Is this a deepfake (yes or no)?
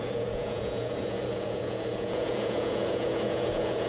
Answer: yes